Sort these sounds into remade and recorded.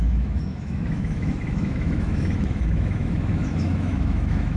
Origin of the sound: remade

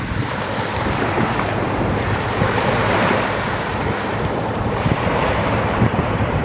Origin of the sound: remade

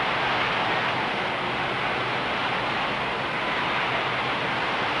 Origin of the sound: recorded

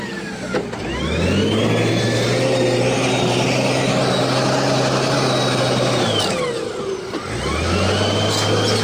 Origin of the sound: recorded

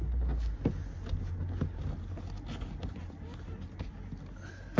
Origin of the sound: recorded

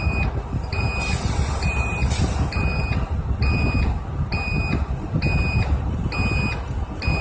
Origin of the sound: recorded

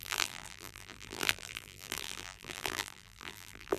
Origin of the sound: remade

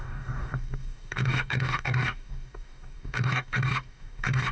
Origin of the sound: remade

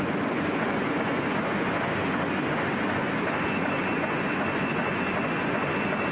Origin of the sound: remade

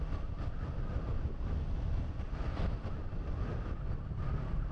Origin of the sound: recorded